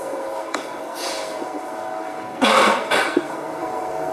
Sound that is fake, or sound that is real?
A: fake